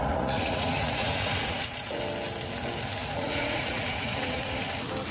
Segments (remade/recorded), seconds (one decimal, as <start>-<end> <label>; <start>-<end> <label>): 0.0-2.0 remade; 2.0-3.0 recorded; 3.0-4.5 remade; 4.5-5.1 recorded